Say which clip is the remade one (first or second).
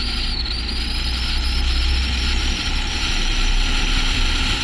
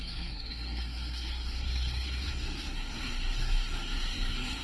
second